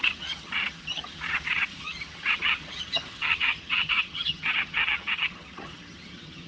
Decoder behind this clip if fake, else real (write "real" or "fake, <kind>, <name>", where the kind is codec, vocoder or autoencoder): fake, vocoder, HiFi-GAN